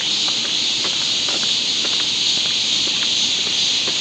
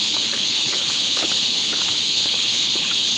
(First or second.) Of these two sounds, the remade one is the second